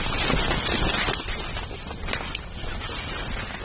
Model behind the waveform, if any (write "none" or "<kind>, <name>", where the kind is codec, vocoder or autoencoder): none